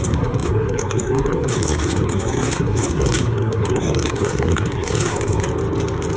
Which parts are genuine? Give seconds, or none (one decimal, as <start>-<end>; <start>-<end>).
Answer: 5.5-6.2